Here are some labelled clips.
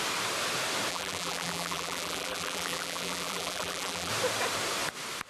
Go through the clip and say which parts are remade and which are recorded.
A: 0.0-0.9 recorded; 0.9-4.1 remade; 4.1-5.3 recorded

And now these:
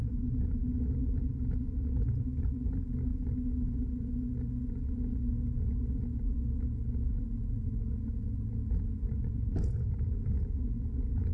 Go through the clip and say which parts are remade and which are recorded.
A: 0.0-11.3 recorded

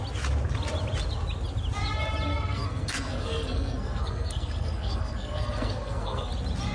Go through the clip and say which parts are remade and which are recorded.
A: 0.0-2.3 recorded; 2.3-6.3 remade; 6.3-6.7 recorded

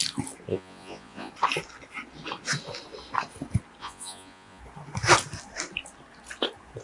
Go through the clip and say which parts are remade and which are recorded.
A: 0.0-0.5 recorded; 0.5-1.3 remade; 1.3-3.8 recorded; 3.8-4.6 remade; 4.6-6.8 recorded